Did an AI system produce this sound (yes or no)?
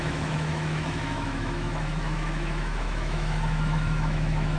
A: yes